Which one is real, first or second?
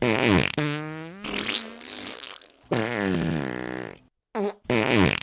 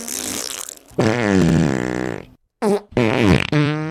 first